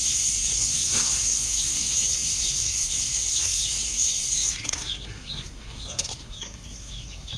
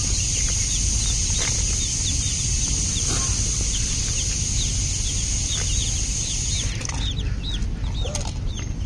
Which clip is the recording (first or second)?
second